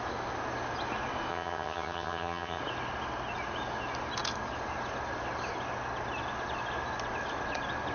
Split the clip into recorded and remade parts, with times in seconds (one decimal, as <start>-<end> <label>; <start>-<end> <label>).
0.0-1.3 recorded; 1.3-2.6 remade; 2.6-7.9 recorded